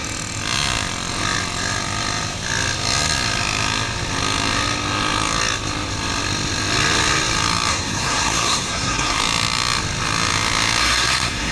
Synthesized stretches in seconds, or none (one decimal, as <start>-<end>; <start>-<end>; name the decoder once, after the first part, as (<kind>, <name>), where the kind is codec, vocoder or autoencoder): 7.7-9.2 (codec, SNAC); 10.8-11.5